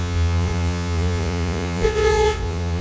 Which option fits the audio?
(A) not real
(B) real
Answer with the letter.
A